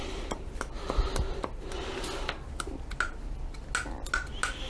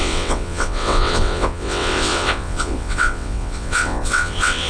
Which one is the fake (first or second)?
second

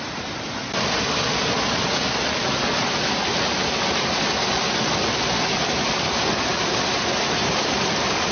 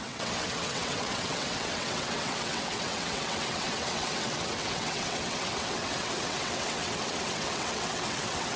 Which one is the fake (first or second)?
second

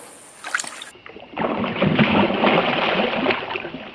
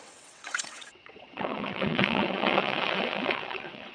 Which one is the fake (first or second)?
second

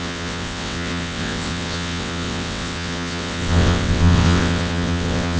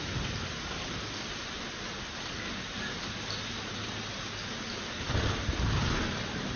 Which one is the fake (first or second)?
first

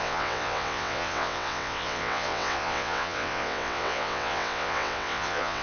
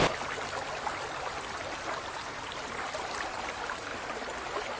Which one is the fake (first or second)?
first